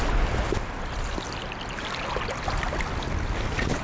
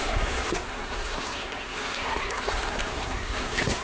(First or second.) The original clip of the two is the first